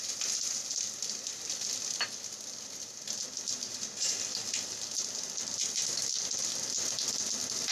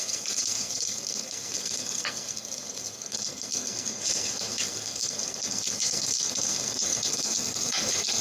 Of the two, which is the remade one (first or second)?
second